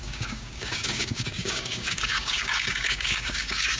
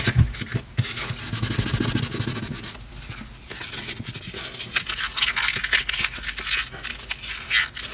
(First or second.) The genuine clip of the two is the second